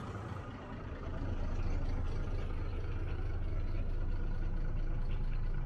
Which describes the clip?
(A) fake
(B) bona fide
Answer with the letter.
A